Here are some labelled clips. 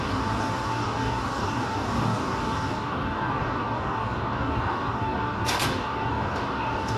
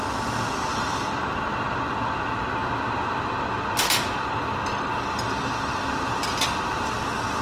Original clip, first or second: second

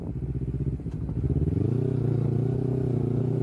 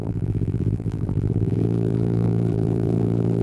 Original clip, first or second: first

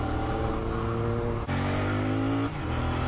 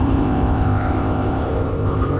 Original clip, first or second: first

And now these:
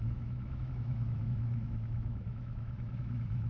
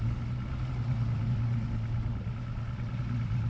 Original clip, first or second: second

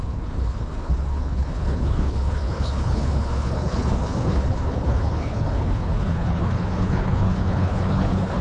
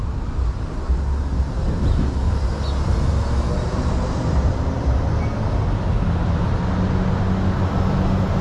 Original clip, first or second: second